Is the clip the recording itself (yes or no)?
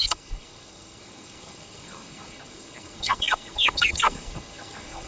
no